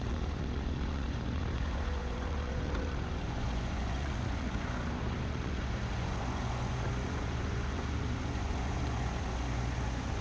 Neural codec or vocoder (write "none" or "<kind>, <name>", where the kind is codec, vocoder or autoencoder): vocoder, Vocos